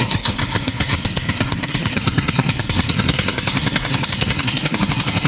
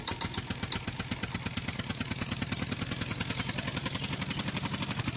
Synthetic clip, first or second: first